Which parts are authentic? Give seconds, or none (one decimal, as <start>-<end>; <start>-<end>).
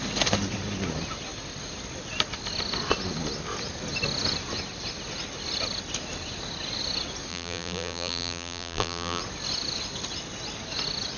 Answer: 0.0-7.3; 9.2-11.2